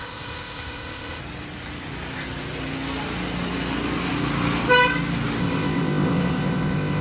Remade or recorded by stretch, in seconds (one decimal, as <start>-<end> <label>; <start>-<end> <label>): 0.0-1.2 remade; 1.2-5.4 recorded; 5.4-7.0 remade